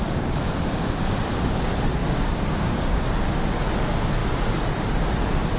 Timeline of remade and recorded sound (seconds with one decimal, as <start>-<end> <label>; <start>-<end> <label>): 0.0-2.0 recorded; 2.0-3.1 remade; 3.1-5.6 recorded

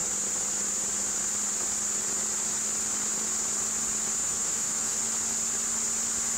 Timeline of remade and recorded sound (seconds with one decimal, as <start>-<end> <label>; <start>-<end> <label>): 0.0-4.2 recorded; 4.2-5.0 remade; 5.0-6.4 recorded

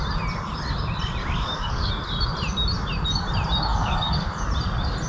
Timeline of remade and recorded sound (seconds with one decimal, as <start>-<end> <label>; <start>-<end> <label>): 0.0-1.2 recorded; 1.2-1.9 remade; 1.9-3.7 recorded; 3.7-4.4 remade; 4.4-5.1 recorded

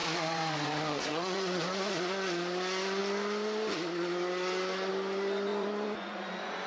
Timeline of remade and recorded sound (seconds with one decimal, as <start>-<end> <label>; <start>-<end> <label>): 0.0-1.9 remade; 1.9-5.5 recorded; 5.5-6.7 remade

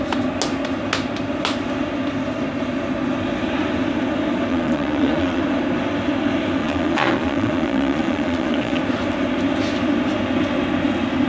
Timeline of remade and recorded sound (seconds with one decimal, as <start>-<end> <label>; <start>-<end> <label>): 0.0-4.5 recorded; 4.5-5.4 remade; 5.4-6.6 recorded; 6.6-8.8 remade; 8.8-11.3 recorded

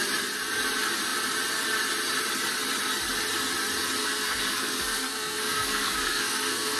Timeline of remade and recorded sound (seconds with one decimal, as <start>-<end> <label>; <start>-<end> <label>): 0.0-4.0 recorded; 4.0-6.8 remade